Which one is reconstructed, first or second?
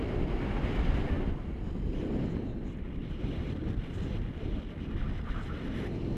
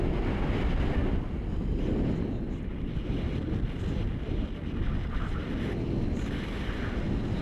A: first